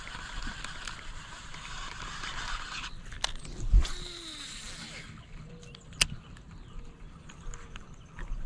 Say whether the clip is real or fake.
real